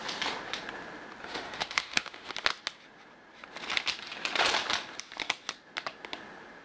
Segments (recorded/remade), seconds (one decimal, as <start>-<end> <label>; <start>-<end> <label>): 0.0-1.2 recorded; 1.2-2.3 remade; 2.3-6.6 recorded